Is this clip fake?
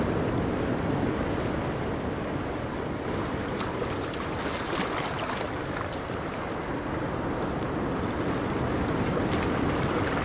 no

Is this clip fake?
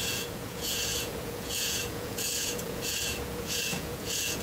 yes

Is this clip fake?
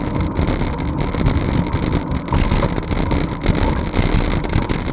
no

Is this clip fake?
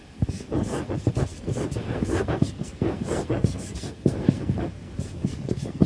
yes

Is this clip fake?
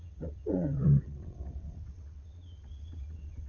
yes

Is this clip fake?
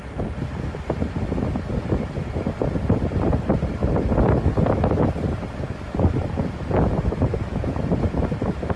no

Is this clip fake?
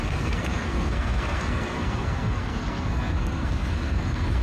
yes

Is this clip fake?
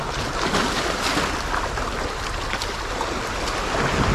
no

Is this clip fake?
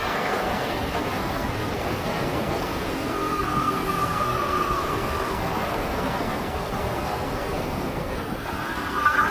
yes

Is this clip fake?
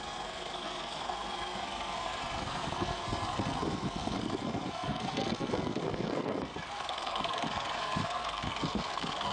yes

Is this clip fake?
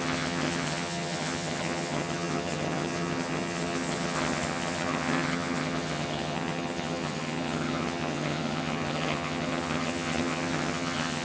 yes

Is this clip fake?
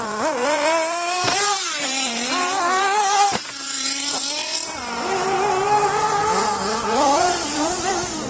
yes